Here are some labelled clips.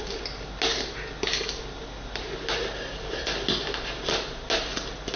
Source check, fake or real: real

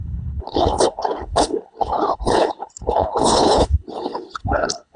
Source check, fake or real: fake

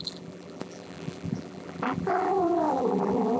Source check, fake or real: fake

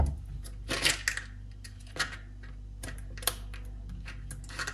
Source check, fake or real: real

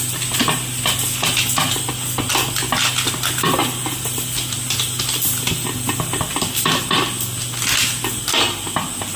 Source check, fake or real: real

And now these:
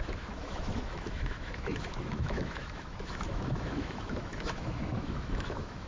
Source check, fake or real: fake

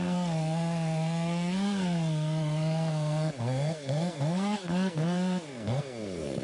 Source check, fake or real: fake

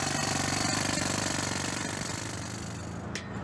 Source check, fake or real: real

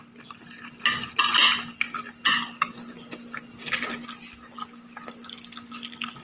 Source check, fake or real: real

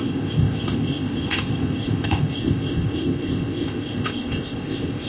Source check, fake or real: fake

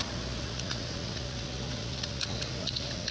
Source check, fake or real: fake